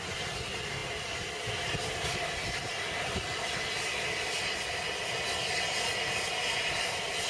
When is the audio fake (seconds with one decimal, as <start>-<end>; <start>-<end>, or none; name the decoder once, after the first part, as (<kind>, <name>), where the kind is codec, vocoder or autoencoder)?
none